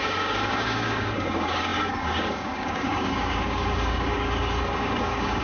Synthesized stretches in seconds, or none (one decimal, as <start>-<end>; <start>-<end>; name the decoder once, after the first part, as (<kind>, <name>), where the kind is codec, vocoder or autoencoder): 0.0-5.4 (codec, DAC)